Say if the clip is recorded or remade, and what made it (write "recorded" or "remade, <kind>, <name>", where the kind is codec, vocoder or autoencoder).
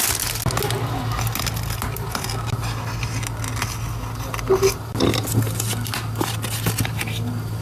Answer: recorded